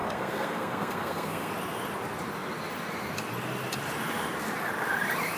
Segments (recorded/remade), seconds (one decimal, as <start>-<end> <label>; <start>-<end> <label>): 0.0-1.5 remade; 1.5-5.4 recorded